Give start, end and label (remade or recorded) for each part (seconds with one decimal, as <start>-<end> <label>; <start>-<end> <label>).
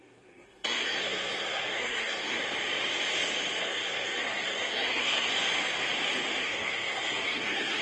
0.0-2.4 remade; 2.4-3.6 recorded; 3.6-5.3 remade; 5.3-6.4 recorded; 6.4-7.8 remade